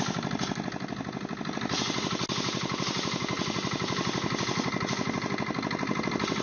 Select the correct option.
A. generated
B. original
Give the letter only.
B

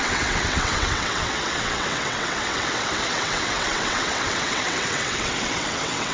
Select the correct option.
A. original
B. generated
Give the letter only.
B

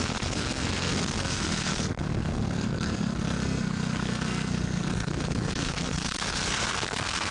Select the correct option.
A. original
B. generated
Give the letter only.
B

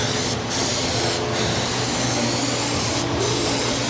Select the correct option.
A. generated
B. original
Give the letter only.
B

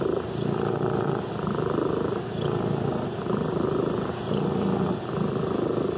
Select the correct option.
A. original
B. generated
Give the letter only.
A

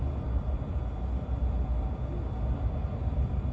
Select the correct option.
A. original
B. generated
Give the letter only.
A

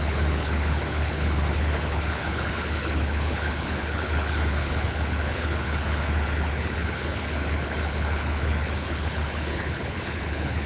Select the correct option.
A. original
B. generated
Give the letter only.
B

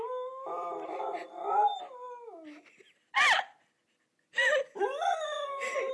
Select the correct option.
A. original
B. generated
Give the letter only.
A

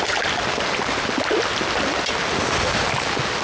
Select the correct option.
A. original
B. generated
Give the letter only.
A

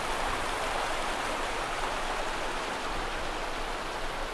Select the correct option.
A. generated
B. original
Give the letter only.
B